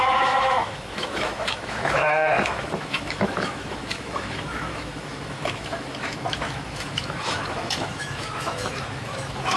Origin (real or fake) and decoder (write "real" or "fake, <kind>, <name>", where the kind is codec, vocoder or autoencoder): fake, autoencoder, DAC-VAE